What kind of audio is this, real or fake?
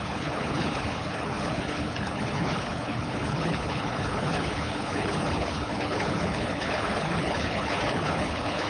fake